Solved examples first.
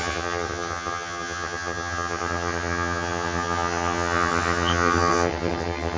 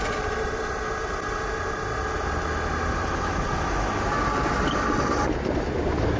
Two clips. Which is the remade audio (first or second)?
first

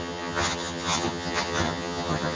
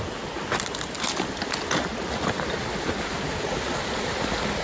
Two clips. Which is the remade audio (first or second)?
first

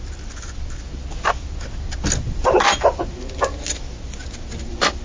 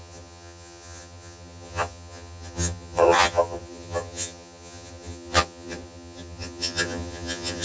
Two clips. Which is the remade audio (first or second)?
second